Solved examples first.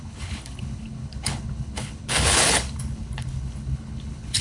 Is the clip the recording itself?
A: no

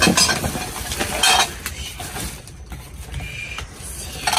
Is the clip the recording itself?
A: yes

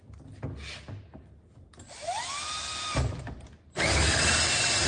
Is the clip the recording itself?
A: yes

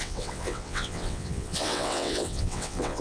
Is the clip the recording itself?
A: no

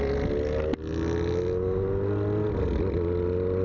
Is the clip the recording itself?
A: yes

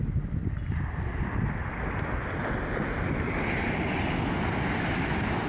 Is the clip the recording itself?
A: yes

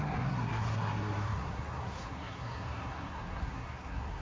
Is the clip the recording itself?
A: no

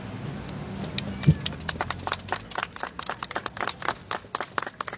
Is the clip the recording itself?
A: yes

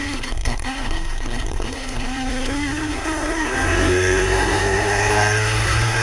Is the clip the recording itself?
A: no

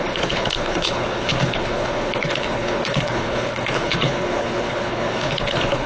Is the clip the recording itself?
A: no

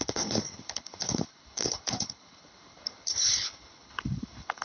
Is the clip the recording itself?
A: no